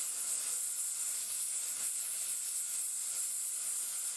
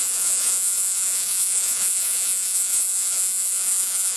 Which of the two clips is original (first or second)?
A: first